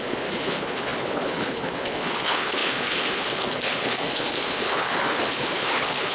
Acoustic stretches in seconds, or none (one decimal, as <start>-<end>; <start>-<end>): none